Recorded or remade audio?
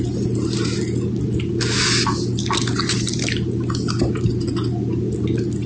recorded